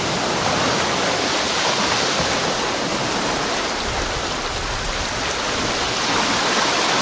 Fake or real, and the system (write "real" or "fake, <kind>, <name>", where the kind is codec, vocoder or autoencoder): real